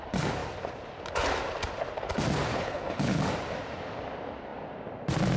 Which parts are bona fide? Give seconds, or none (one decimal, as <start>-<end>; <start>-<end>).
0.0-2.5; 3.2-5.4

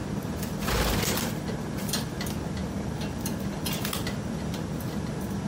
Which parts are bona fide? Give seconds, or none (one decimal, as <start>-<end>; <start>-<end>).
0.7-5.5

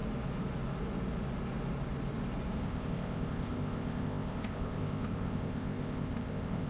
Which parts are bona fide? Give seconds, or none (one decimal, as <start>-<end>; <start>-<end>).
0.0-2.6